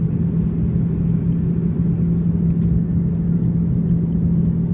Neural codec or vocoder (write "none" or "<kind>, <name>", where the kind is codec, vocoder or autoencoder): none